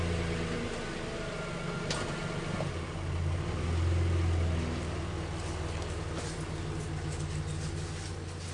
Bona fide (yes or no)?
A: yes